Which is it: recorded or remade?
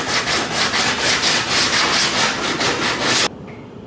recorded